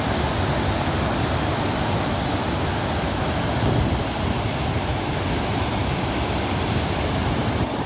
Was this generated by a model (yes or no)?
no